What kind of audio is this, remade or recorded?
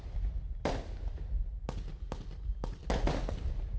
recorded